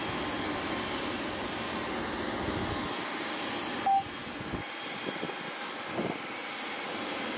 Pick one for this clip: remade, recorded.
recorded